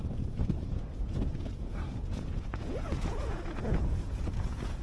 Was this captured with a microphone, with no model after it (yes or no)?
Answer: no